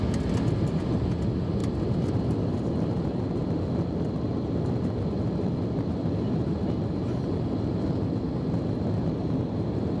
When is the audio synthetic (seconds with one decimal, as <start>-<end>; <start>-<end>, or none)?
none